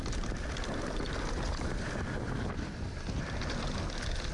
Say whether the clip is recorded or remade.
recorded